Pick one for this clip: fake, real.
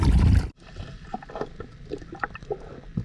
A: real